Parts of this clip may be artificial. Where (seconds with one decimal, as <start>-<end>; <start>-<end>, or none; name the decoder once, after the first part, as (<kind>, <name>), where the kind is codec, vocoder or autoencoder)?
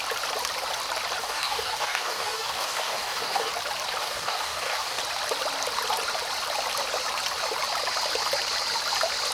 1.2-3.5 (codec, DAC); 4.0-5.0